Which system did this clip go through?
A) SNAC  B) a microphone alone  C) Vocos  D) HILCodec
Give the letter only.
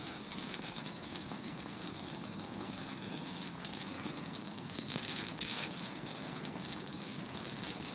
A